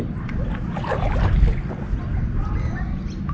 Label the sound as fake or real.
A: real